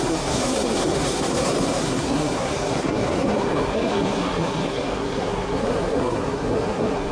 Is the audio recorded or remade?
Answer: remade